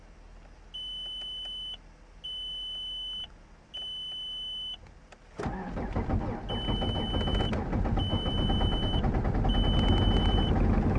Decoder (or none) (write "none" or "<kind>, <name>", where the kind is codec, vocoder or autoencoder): none